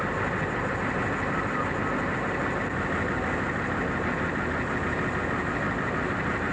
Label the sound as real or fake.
real